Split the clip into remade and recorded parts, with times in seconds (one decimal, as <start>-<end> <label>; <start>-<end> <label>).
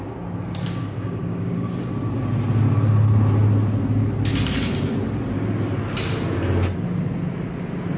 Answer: 0.0-0.8 recorded; 0.8-1.7 remade; 1.7-8.0 recorded